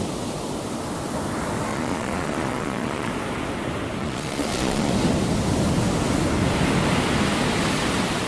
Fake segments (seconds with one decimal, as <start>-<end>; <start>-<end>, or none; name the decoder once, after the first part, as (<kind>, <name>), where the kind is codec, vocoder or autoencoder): 1.7-3.1 (vocoder, Vocos); 4.0-4.9